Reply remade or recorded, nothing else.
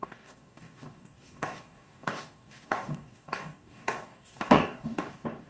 remade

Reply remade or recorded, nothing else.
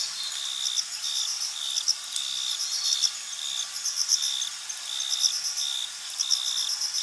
recorded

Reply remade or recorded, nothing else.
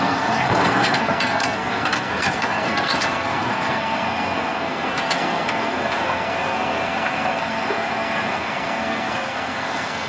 remade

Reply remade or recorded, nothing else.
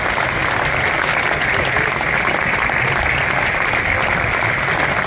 recorded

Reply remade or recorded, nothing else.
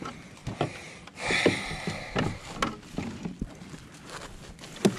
recorded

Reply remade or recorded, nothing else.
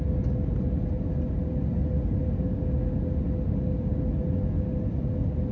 recorded